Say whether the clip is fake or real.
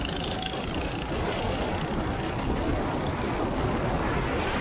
real